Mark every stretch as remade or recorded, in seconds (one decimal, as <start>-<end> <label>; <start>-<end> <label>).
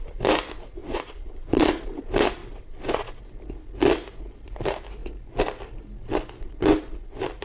0.0-0.8 recorded; 0.8-2.0 remade; 2.0-2.4 recorded; 2.4-3.2 remade; 3.2-7.4 recorded